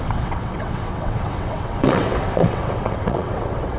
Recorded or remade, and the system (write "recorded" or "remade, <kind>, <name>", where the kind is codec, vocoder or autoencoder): remade, vocoder, WaveNeXt